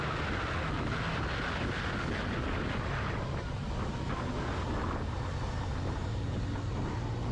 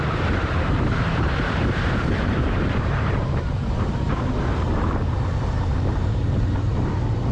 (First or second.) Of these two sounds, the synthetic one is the second